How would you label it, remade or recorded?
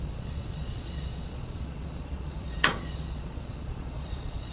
remade